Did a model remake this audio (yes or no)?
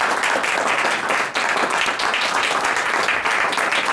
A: no